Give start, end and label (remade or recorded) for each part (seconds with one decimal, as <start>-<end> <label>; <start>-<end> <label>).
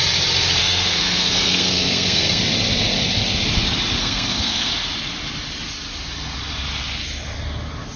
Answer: 0.0-0.6 recorded; 0.6-2.4 remade; 2.4-4.0 recorded; 4.0-4.7 remade; 4.7-8.0 recorded